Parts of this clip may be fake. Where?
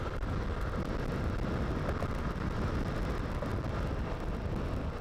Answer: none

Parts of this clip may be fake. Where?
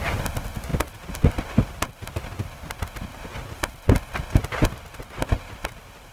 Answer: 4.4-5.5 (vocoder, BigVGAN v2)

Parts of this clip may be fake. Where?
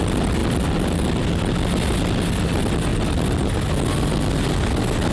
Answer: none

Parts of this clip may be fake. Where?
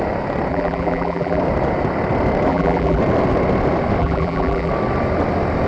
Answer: 0.5-1.4 (vocoder, BigVGAN v2); 2.5-3.0; 4.0-4.7